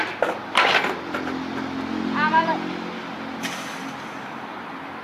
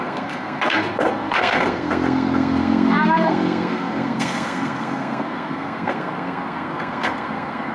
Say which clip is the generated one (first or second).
second